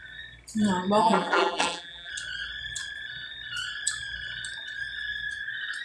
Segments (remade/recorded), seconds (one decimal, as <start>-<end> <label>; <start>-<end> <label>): 0.0-1.0 recorded; 1.0-2.1 remade; 2.1-5.8 recorded